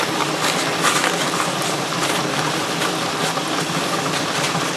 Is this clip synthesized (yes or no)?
no